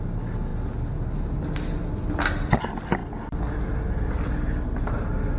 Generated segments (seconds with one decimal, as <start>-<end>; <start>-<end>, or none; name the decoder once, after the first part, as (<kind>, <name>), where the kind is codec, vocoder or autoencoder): none